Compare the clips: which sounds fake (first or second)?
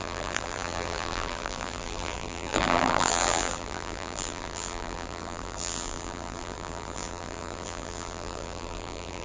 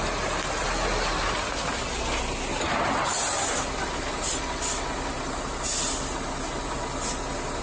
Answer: first